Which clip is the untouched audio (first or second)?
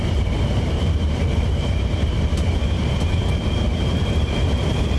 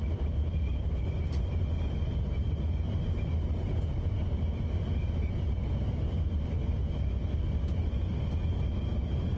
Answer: second